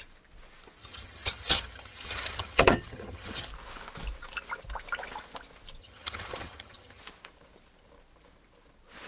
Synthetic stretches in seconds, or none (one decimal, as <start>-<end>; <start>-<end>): 0.8-3.5; 5.8-7.0